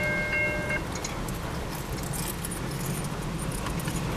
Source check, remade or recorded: recorded